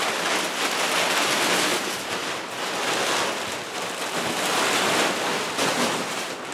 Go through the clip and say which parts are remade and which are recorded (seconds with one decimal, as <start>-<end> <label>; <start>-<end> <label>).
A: 0.0-6.5 recorded